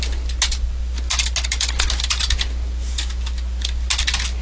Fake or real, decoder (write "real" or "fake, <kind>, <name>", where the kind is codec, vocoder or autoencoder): real